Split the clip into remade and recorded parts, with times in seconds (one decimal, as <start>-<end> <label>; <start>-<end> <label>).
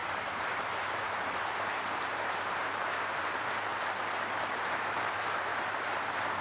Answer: 0.0-1.5 recorded; 1.5-3.7 remade; 3.7-4.4 recorded; 4.4-5.5 remade; 5.5-6.4 recorded